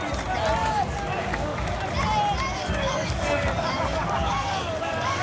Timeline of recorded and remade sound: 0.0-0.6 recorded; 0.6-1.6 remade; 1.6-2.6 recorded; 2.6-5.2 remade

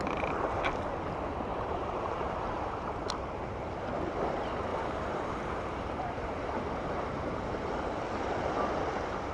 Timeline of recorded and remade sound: 0.0-1.5 recorded; 1.5-3.1 remade; 3.1-4.7 recorded; 4.7-8.0 remade; 8.0-9.3 recorded

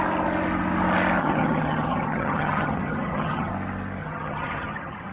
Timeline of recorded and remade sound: 0.0-1.2 recorded; 1.2-3.5 remade; 3.5-4.0 recorded; 4.0-5.1 remade

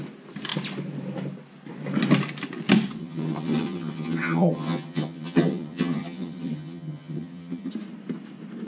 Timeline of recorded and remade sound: 0.0-3.0 recorded; 3.0-7.7 remade; 7.7-8.7 recorded